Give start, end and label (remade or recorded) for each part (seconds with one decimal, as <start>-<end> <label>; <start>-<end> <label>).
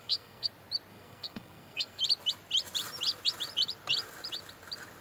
0.0-0.5 remade; 0.5-0.9 recorded; 0.9-2.0 remade; 2.0-5.0 recorded